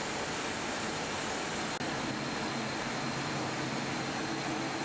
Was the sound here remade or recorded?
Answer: recorded